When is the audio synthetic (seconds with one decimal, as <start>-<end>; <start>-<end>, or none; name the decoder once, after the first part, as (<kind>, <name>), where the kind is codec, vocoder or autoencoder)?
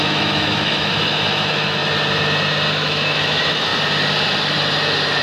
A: 0.0-1.8 (autoencoder, DAC-VAE); 2.7-3.7